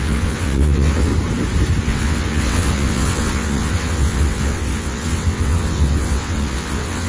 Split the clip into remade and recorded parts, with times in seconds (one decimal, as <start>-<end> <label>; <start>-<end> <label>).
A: 0.0-1.1 remade; 1.1-1.8 recorded; 1.8-7.1 remade